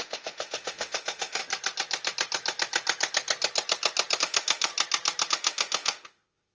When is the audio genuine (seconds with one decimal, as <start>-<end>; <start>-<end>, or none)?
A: 1.4-4.2; 4.7-5.3